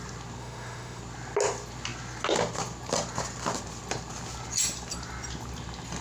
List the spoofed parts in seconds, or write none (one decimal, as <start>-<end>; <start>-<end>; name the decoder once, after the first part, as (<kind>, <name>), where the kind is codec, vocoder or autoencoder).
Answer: 0.4-1.0 (autoencoder, DAC-VAE)